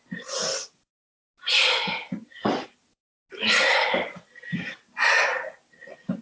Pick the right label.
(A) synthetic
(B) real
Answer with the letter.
B